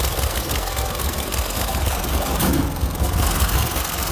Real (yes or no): no